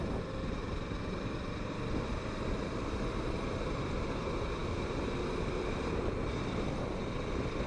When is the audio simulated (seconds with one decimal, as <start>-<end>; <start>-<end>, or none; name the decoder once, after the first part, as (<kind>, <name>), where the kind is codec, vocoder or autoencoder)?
0.6-4.0 (vocoder, BigVGAN v2)